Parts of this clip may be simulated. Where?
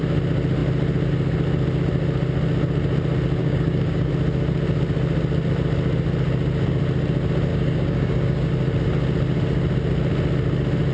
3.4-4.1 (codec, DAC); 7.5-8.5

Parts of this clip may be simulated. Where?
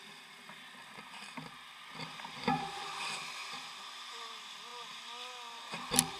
none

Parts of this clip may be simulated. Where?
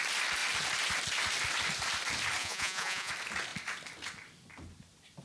2.4-3.1 (vocoder, Vocos)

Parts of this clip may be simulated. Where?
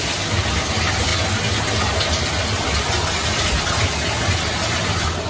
none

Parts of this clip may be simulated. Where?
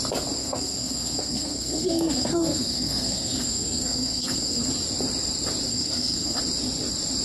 0.4-4.7 (codec, SNAC); 5.7-6.4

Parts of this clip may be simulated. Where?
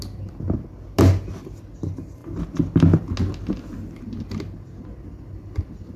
none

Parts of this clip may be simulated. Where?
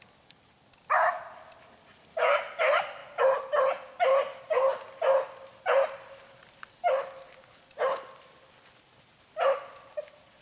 none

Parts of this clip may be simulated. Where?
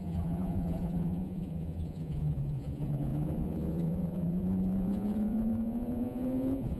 0.0-6.8 (vocoder, Vocos)